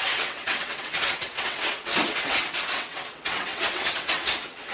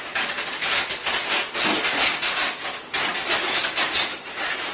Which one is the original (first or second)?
second